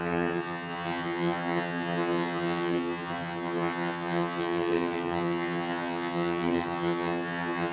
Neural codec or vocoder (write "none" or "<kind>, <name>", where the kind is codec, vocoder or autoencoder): vocoder, HiFi-GAN